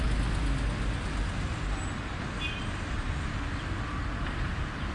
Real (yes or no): yes